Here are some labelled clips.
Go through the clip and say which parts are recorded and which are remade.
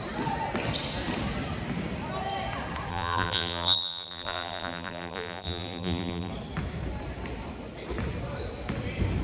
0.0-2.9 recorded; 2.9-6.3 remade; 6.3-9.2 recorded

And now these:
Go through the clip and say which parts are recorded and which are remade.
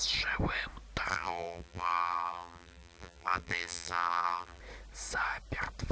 0.0-1.1 recorded; 1.1-4.6 remade; 4.6-5.9 recorded